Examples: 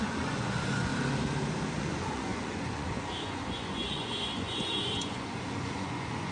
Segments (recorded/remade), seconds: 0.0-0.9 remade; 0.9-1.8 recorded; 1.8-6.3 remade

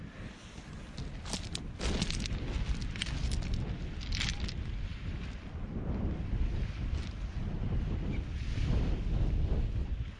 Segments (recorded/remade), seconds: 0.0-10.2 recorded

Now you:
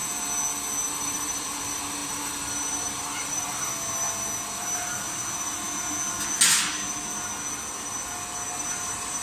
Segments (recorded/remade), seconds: 0.0-1.0 recorded; 1.0-3.7 remade; 3.7-8.6 recorded; 8.6-9.2 remade